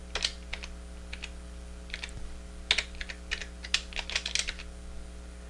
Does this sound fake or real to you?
real